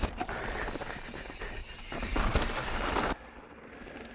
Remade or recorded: recorded